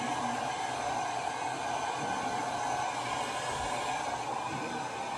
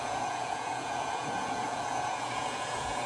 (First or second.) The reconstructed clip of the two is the second